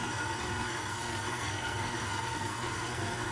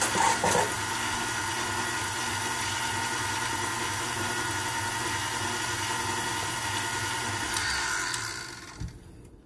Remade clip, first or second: first